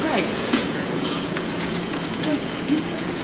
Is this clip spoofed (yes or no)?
yes